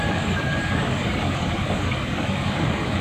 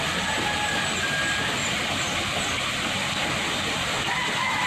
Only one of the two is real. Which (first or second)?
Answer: second